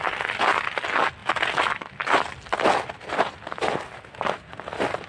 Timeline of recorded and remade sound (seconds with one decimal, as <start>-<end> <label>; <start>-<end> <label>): 0.0-5.1 recorded